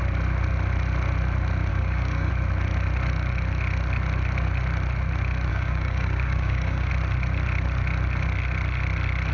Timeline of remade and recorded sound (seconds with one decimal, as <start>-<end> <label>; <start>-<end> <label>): 0.0-1.7 recorded; 1.7-2.3 remade; 2.3-5.5 recorded; 5.5-6.9 remade; 6.9-9.3 recorded